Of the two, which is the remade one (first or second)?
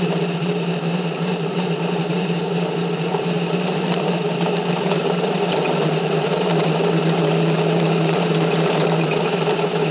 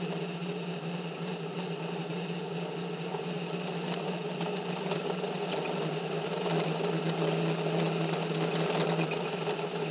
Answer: first